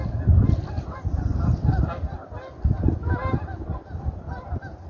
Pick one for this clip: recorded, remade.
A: recorded